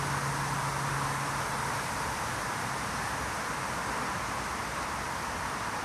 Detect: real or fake real